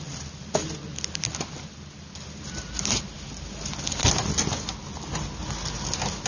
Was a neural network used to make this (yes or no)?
no